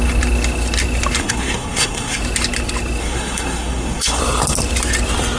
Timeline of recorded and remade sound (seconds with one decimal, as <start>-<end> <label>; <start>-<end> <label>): 0.0-1.2 recorded; 1.2-2.2 remade; 2.2-3.0 recorded; 3.0-4.2 remade; 4.2-5.4 recorded